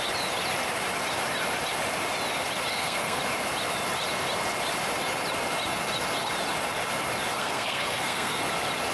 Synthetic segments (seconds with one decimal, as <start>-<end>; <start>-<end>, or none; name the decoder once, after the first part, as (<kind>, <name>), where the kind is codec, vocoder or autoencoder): 2.7-3.2 (codec, SNAC); 7.4-8.4